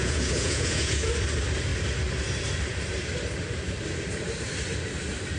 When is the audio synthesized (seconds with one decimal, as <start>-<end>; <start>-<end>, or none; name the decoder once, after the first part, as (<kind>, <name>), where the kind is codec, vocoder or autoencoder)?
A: 0.0-1.1 (vocoder, Vocos)